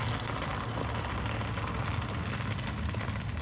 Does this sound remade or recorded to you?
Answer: recorded